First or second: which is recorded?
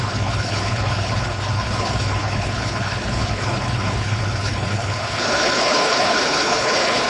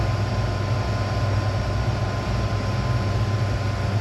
second